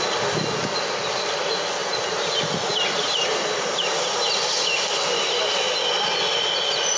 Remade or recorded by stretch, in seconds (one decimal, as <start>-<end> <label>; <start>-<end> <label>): 0.0-1.8 recorded; 1.8-2.3 remade; 2.3-2.7 recorded; 2.7-4.2 remade; 4.2-7.0 recorded